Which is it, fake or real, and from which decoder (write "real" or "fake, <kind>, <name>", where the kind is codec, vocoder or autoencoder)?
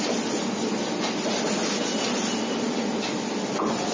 real